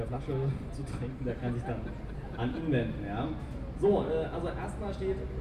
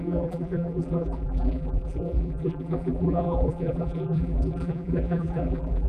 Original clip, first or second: first